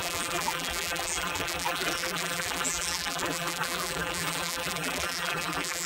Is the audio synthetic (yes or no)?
yes